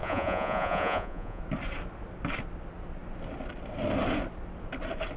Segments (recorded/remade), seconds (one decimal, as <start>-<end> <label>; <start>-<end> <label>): 0.0-1.4 remade; 1.4-5.2 recorded